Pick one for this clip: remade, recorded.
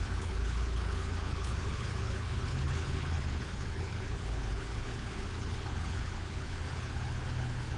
remade